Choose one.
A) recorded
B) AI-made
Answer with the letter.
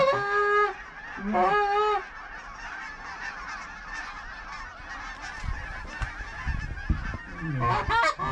A